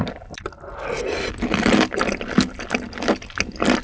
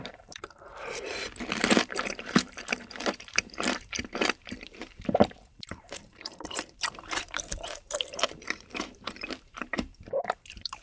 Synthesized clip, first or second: second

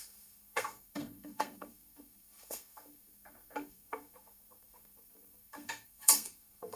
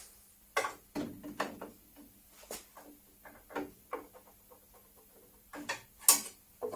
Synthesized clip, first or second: first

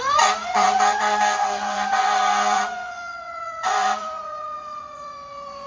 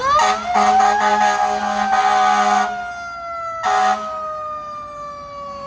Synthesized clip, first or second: first